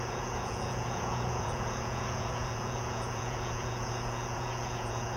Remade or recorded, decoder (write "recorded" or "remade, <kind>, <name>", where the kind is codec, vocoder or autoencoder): remade, vocoder, Vocos